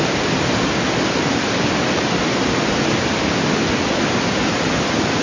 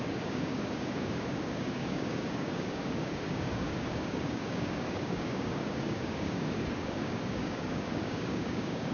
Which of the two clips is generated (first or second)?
second